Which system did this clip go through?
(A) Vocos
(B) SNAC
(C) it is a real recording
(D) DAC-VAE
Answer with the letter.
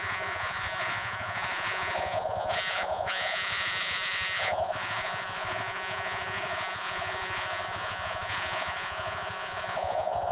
A